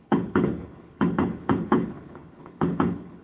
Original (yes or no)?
no